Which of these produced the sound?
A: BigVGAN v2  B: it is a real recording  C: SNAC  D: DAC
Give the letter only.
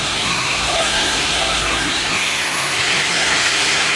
C